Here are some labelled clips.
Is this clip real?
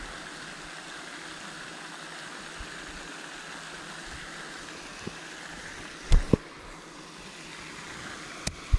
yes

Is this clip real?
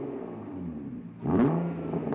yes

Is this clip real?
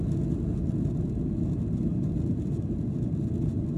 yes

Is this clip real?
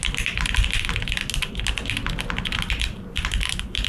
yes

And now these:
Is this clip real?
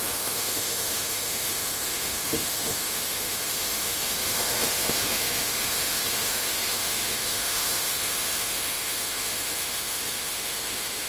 no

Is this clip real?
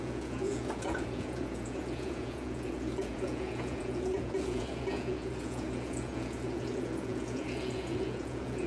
no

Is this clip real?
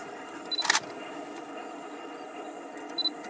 yes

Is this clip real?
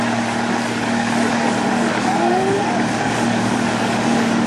no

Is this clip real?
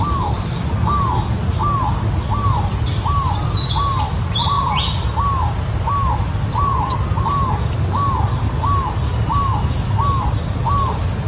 yes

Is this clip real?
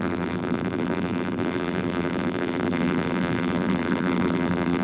no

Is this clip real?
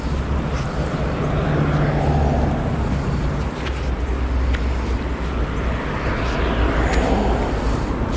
yes